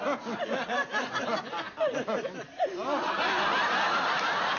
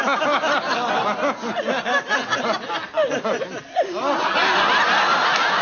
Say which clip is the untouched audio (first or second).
second